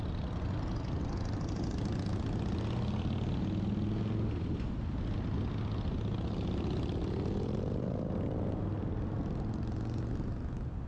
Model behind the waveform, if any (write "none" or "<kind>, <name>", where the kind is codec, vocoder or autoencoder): none